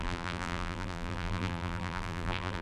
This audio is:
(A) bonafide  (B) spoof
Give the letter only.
B